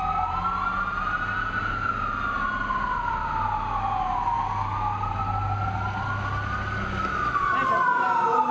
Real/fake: real